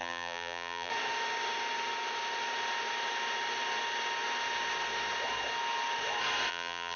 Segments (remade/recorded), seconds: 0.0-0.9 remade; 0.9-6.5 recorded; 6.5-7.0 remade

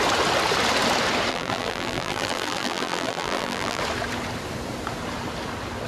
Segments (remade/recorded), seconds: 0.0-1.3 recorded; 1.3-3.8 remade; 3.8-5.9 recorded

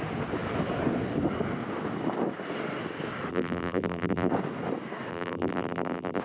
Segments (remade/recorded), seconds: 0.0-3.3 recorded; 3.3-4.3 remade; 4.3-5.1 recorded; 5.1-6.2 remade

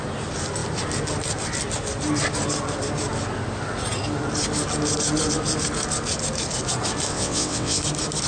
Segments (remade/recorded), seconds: 0.0-7.1 recorded; 7.1-7.8 remade; 7.8-8.3 recorded